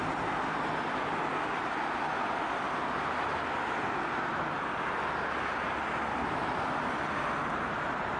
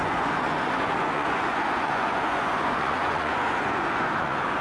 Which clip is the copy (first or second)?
second